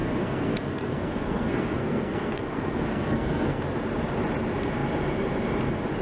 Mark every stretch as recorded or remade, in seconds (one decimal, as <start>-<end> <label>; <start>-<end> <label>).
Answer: 0.0-3.6 remade; 3.6-6.0 recorded